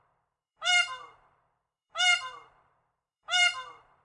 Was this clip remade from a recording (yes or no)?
yes